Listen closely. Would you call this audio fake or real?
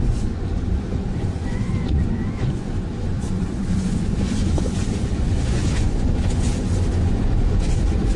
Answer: fake